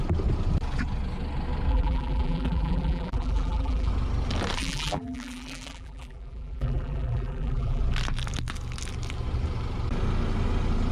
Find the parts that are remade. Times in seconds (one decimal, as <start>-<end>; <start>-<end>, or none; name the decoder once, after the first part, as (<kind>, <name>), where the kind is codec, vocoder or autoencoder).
1.7-3.9 (vocoder, BigVGAN v2); 4.6-7.8